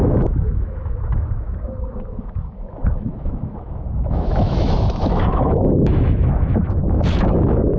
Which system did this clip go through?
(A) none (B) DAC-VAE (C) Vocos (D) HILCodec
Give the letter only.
B